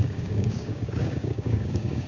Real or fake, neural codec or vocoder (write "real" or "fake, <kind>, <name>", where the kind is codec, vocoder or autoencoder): fake, codec, DAC